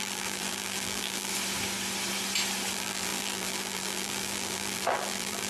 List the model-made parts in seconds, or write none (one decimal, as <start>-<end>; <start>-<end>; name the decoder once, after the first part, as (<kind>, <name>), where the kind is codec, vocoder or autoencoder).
0.0-1.3 (vocoder, BigVGAN v2); 2.7-5.5